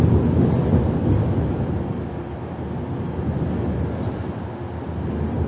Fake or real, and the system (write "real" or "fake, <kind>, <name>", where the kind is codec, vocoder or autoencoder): real